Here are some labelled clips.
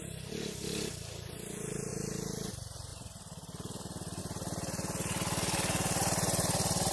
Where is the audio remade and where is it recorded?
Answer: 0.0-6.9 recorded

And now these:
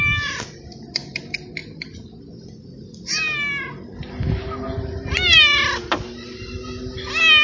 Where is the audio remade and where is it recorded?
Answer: 0.0-7.4 recorded

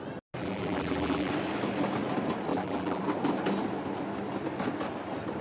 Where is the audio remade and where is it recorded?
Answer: 0.0-0.4 recorded; 0.4-1.3 remade; 1.3-2.5 recorded; 2.5-3.0 remade; 3.0-5.4 recorded

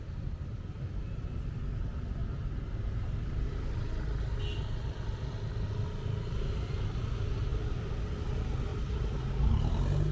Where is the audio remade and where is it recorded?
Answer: 0.0-8.7 recorded; 8.7-9.5 remade; 9.5-10.1 recorded

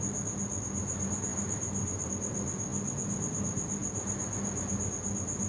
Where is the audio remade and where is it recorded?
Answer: 0.0-1.3 recorded; 1.3-2.1 remade; 2.1-5.5 recorded